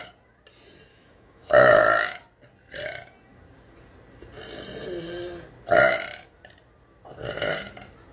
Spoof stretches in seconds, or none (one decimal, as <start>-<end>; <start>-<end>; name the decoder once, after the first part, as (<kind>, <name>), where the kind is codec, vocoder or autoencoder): 0.9-1.8 (autoencoder, DAC-VAE)